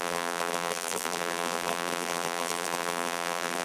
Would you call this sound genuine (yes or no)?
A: no